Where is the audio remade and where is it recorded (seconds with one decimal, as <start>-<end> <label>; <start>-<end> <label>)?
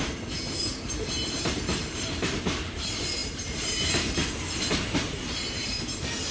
0.0-6.3 remade